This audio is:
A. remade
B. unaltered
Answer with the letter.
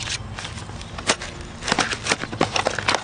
B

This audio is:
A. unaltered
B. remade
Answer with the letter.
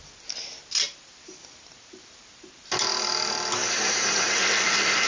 A